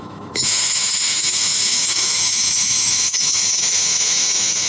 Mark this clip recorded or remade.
remade